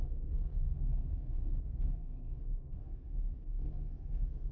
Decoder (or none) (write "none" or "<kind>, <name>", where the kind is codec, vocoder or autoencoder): codec, SNAC